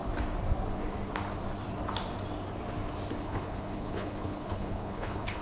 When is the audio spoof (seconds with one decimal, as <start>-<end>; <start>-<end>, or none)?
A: 3.2-5.4